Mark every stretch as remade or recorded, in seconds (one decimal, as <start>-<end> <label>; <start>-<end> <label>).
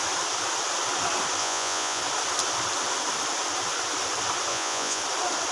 0.0-1.4 recorded; 1.4-2.0 remade; 2.0-4.5 recorded; 4.5-5.0 remade; 5.0-5.5 recorded